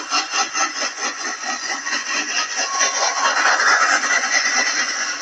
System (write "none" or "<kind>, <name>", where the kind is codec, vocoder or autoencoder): vocoder, Vocos